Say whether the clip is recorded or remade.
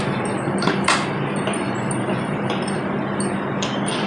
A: remade